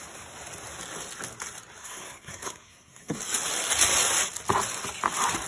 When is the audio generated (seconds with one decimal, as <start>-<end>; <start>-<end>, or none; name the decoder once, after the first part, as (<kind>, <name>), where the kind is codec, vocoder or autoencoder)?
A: 1.8-3.2 (codec, SNAC)